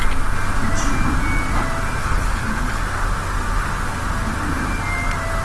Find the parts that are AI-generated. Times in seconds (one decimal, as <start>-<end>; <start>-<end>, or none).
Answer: 2.0-2.8

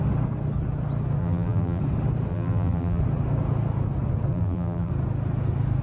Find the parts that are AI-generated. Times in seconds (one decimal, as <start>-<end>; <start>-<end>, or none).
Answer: 1.2-1.8; 2.3-3.0; 4.3-4.9

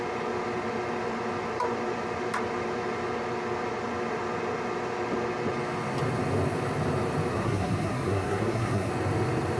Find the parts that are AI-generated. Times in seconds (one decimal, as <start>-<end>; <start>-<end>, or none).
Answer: 7.3-8.9

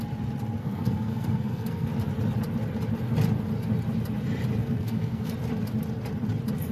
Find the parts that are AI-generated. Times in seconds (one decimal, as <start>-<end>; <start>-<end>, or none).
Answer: 0.6-1.9; 4.6-5.3

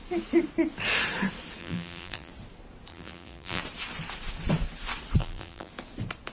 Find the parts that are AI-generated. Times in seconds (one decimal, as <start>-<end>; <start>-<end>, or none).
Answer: 1.6-2.3; 2.9-3.6; 5.2-5.7

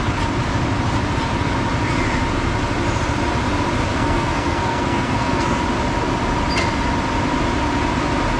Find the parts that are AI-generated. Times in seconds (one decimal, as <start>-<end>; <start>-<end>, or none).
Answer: 3.9-5.6

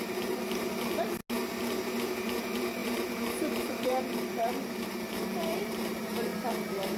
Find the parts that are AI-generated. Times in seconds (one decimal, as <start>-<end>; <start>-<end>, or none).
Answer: 0.0-1.2; 2.4-6.3

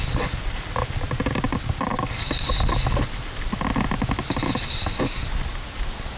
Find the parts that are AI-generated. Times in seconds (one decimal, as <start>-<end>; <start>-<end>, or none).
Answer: none